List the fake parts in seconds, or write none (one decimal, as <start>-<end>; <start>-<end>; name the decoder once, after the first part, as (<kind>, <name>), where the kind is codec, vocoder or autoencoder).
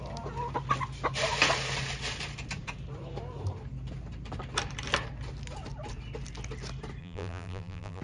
7.0-8.0 (vocoder, BigVGAN v2)